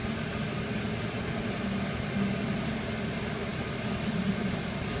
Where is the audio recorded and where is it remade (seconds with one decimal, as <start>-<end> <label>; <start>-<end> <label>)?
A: 0.0-5.0 recorded